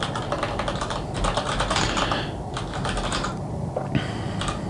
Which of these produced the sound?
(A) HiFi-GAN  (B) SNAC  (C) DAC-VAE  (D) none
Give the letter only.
D